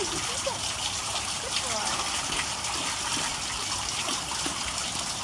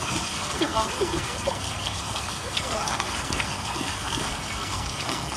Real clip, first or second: first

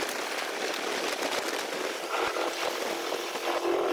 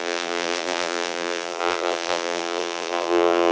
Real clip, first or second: first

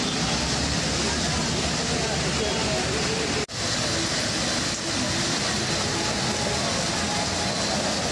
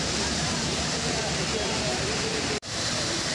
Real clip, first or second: first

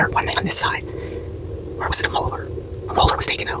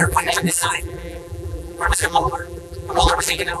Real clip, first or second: first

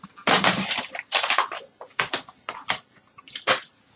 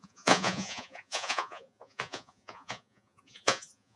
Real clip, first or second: first